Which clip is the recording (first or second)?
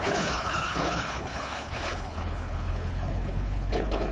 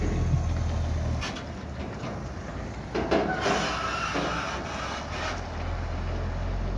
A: second